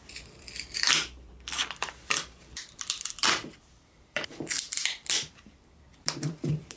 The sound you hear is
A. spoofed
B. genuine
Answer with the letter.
A